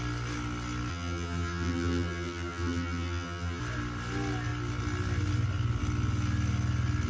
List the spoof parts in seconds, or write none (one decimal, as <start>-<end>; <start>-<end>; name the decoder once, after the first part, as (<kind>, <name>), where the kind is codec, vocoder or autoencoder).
0.9-3.6 (vocoder, BigVGAN v2)